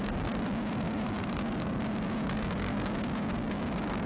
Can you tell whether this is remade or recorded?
remade